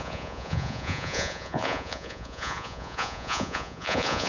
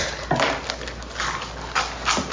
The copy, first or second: first